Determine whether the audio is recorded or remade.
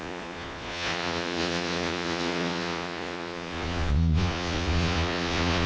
remade